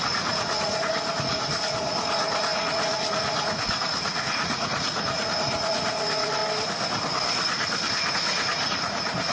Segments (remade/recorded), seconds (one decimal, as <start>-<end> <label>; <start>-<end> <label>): 0.0-6.4 remade; 6.4-8.1 recorded; 8.1-9.3 remade